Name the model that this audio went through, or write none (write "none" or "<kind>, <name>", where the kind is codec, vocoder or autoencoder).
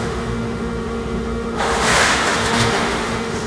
autoencoder, DAC-VAE